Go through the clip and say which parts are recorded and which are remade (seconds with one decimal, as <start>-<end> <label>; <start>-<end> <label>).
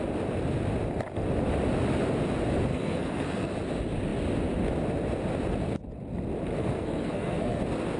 0.0-2.7 recorded; 2.7-3.5 remade; 3.5-6.6 recorded; 6.6-7.6 remade; 7.6-8.0 recorded